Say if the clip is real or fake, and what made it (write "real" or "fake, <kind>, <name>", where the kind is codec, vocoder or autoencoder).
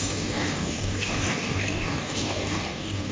fake, codec, DAC